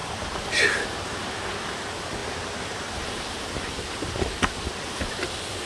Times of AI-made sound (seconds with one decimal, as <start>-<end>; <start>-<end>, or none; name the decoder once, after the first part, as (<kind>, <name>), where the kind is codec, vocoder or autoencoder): none